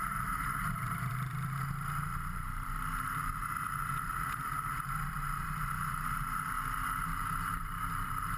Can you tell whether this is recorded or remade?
remade